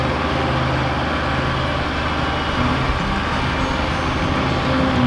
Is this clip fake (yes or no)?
no